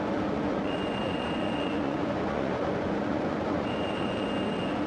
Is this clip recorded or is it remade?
remade